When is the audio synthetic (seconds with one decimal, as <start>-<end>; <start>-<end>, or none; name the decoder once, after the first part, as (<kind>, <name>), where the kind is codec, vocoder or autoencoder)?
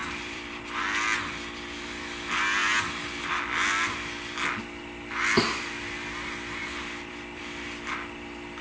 0.0-0.6 (vocoder, BigVGAN v2); 6.6-7.4